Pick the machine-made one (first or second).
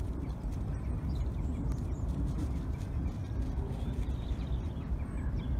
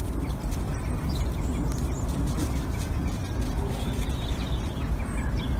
first